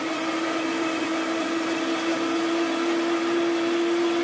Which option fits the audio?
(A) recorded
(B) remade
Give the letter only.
A